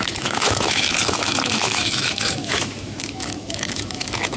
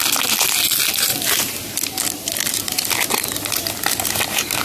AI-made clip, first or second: first